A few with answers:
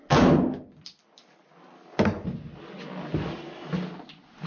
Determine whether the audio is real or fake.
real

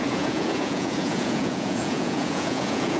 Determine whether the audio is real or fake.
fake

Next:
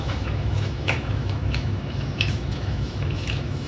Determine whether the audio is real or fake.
fake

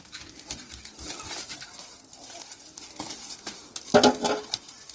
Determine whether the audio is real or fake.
real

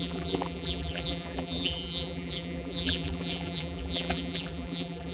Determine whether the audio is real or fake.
fake